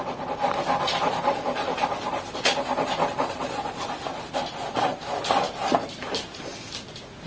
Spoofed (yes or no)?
no